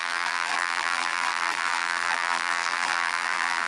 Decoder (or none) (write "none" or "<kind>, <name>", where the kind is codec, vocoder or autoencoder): vocoder, BigVGAN v2